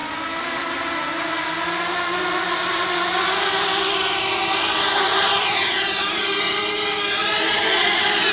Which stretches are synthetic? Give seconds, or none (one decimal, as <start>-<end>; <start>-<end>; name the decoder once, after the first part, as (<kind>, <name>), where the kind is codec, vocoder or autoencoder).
5.1-6.6 (vocoder, BigVGAN v2); 7.2-8.3